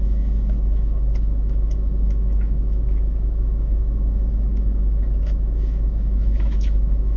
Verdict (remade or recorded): remade